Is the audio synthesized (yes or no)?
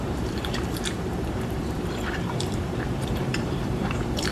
yes